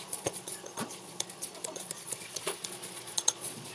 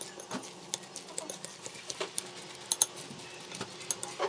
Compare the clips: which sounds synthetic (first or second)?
first